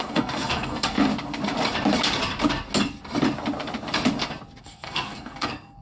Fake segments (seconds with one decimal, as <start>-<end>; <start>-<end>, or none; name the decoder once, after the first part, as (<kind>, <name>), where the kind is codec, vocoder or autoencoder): 0.0-1.1 (codec, SNAC); 4.6-5.8